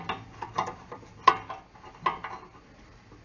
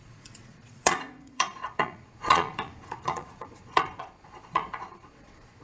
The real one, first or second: first